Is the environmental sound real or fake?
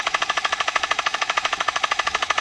fake